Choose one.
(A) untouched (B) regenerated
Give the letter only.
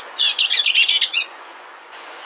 B